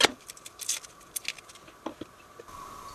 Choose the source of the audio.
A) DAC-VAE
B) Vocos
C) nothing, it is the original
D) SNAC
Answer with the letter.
C